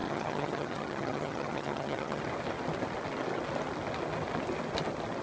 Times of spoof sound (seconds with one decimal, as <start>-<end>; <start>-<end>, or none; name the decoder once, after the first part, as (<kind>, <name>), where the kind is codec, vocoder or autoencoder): 0.0-2.2 (vocoder, HiFi-GAN)